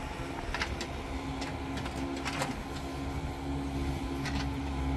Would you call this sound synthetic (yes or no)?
no